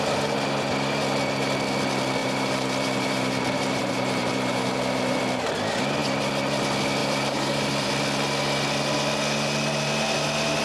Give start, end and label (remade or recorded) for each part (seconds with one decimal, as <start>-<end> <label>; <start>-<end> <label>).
0.0-2.2 recorded; 2.2-5.2 remade; 5.2-7.0 recorded; 7.0-7.9 remade; 7.9-10.6 recorded